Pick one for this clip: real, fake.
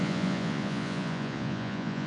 fake